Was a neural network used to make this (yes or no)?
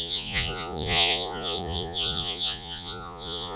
yes